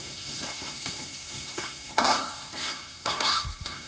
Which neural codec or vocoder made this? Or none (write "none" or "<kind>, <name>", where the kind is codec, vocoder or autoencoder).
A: codec, SNAC